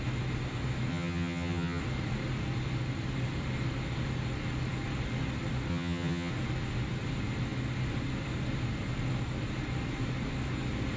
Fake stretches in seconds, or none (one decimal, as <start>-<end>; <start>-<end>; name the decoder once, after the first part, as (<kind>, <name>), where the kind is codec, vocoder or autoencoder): 0.9-1.8 (vocoder, HiFi-GAN); 5.7-6.3